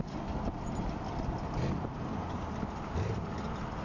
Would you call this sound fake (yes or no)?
no